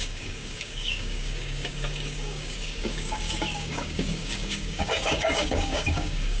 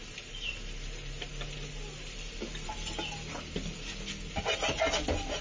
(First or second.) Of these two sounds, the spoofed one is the first